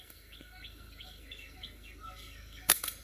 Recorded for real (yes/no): no